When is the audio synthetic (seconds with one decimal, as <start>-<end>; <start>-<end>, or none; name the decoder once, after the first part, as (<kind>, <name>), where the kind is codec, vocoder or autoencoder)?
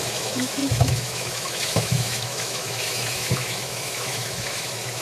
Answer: 0.0-5.0 (autoencoder, DAC-VAE)